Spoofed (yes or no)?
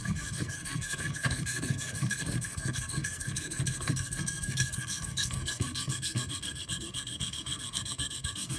yes